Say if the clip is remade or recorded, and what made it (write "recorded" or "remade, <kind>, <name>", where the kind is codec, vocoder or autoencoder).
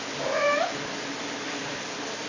remade, vocoder, BigVGAN v2